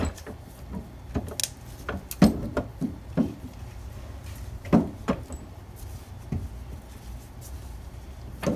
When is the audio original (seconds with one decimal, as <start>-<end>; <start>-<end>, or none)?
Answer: 0.0-8.6